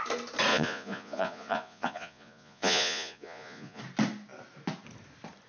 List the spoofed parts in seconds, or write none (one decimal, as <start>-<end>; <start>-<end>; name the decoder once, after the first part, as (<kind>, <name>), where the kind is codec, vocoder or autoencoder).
0.5-3.8 (vocoder, Vocos)